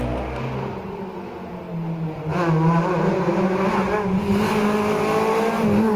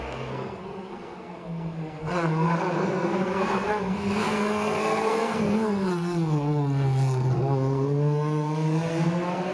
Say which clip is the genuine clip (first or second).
first